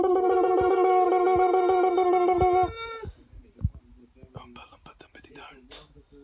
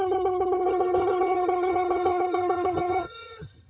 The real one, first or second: first